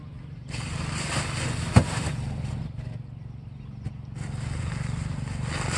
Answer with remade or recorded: recorded